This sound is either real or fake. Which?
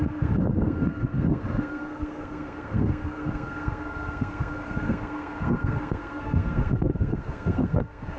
fake